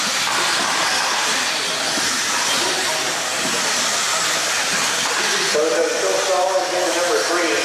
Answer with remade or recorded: recorded